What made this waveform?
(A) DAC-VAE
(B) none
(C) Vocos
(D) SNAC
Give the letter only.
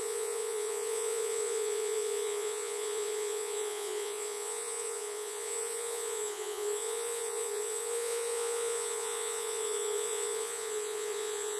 C